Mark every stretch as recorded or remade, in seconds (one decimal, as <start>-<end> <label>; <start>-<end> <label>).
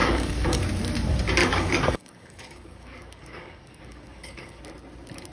0.0-0.6 remade; 0.6-1.4 recorded; 1.4-4.6 remade; 4.6-5.3 recorded